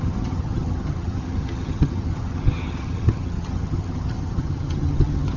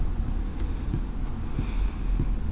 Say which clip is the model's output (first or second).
first